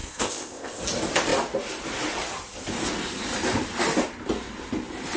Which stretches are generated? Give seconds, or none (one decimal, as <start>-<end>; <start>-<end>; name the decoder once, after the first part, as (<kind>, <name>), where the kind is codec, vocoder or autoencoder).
0.0-0.8 (codec, ZipCodec)